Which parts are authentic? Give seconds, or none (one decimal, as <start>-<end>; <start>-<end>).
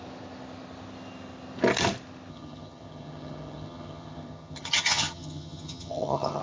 0.0-2.3